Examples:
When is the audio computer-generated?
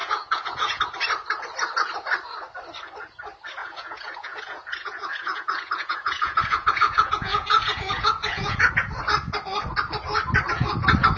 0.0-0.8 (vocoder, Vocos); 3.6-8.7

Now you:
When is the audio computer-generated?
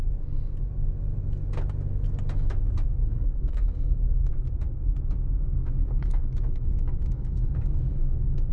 3.0-4.3 (codec, DAC); 5.6-8.5